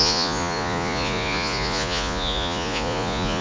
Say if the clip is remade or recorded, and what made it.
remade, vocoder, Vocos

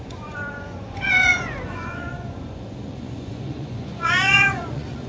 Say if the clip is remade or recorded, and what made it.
remade, vocoder, Vocos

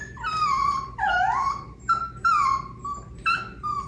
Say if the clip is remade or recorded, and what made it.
recorded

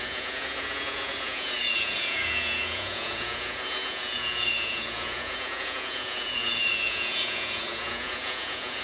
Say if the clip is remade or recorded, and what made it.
remade, vocoder, Vocos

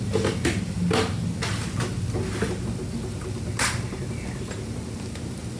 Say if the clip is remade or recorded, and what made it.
recorded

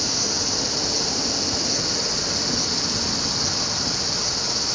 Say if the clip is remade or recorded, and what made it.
recorded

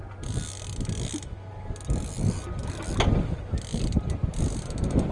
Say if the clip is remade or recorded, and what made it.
recorded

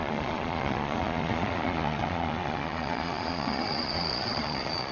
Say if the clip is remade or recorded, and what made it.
remade, vocoder, Vocos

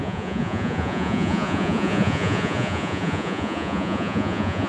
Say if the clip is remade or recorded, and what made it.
remade, vocoder, Vocos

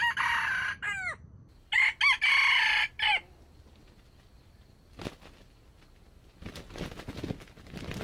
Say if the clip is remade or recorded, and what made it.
recorded